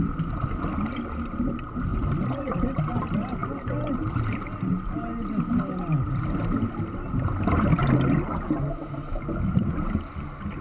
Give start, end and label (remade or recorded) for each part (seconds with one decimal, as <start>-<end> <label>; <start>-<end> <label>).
0.0-10.6 recorded